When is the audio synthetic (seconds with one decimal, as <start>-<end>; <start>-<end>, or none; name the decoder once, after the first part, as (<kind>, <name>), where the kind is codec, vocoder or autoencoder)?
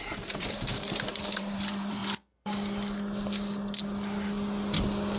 0.0-2.0 (vocoder, BigVGAN v2)